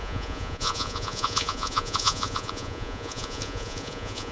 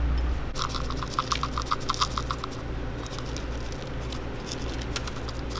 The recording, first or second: second